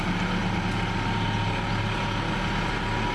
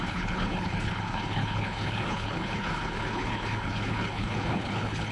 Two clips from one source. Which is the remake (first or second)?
second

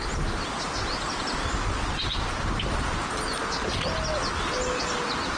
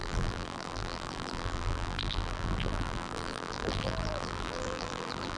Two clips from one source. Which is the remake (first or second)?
second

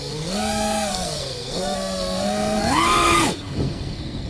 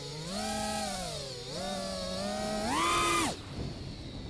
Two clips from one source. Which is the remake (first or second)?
first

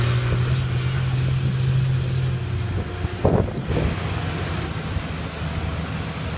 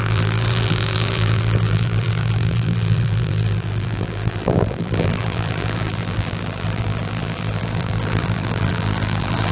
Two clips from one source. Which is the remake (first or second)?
second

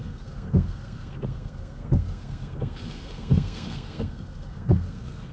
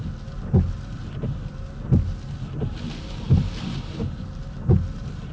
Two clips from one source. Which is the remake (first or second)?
first